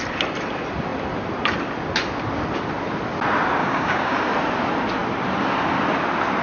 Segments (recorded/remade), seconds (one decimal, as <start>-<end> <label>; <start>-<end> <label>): 0.0-3.6 recorded; 3.6-4.3 remade; 4.3-6.4 recorded